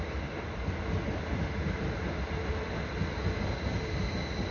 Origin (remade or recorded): recorded